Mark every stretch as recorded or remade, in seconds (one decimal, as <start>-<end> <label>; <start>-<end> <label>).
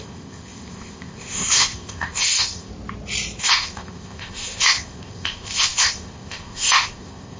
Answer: 0.0-2.7 remade; 2.7-3.4 recorded; 3.4-7.4 remade